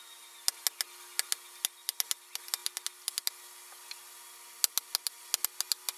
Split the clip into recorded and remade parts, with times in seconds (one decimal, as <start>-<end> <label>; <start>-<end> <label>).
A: 0.0-6.0 recorded